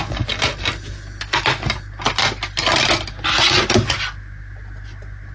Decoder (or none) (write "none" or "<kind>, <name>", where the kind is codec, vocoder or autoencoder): none